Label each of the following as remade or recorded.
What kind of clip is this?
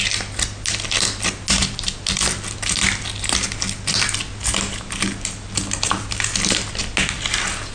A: recorded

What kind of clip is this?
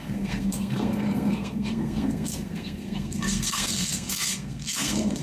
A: remade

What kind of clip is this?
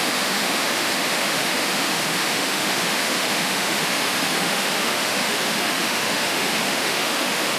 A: remade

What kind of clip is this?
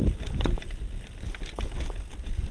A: recorded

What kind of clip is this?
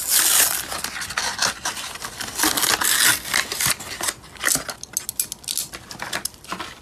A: recorded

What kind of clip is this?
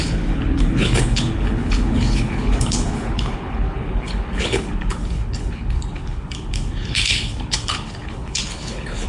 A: remade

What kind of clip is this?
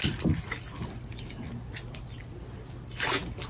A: recorded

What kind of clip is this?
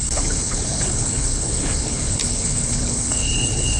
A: remade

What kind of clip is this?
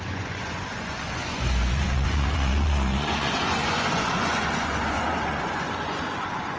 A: remade